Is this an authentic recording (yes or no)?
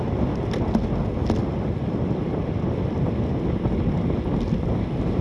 yes